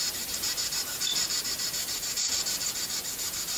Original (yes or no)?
no